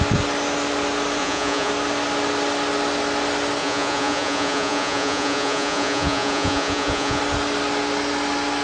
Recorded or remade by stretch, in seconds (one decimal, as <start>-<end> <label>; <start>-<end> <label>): 0.0-1.2 recorded; 1.2-1.7 remade; 1.7-3.6 recorded; 3.6-7.2 remade; 7.2-8.6 recorded

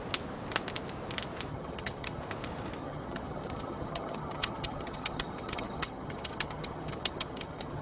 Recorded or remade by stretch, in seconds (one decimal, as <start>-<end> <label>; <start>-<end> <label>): 0.0-1.5 recorded; 1.5-2.2 remade; 2.2-2.8 recorded; 2.8-7.8 remade

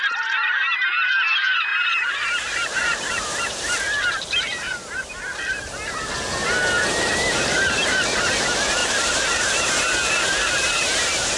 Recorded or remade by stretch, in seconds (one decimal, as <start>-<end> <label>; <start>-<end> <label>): 0.0-11.4 remade